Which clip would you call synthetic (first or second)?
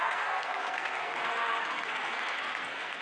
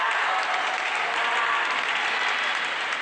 first